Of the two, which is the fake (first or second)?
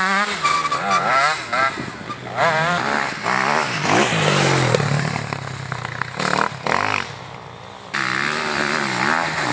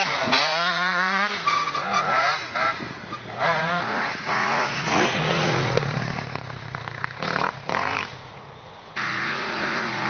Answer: second